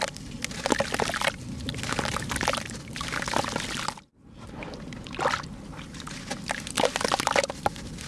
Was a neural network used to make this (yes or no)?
no